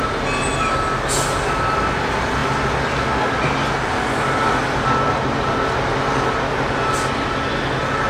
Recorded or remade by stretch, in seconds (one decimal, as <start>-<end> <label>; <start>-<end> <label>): 0.0-8.1 recorded